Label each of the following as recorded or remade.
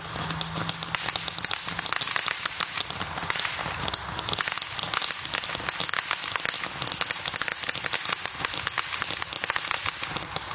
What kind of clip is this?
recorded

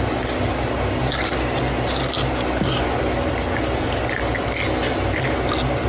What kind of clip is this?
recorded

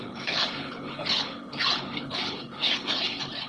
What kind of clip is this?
remade